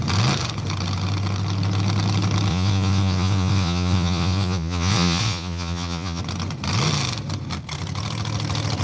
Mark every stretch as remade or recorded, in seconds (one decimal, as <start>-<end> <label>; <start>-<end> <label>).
0.0-2.5 recorded; 2.5-6.2 remade; 6.2-8.8 recorded